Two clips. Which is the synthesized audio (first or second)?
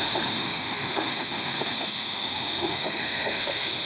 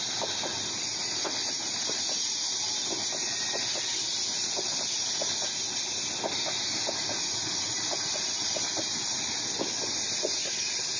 first